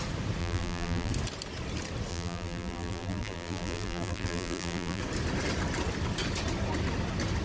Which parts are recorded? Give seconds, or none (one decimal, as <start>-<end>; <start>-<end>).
0.0-0.4; 1.1-2.1; 5.0-7.4